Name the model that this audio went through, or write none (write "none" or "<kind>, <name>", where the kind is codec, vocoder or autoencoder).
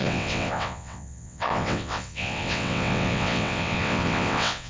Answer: vocoder, WaveNeXt